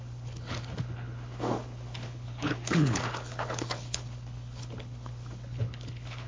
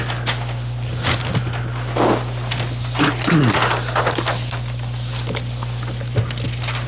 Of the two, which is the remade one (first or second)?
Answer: first